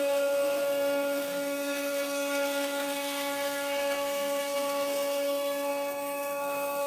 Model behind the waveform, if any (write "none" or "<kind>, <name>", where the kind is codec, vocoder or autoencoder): codec, SNAC